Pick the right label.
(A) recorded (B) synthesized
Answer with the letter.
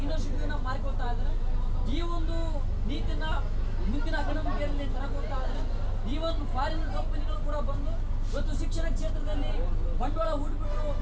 A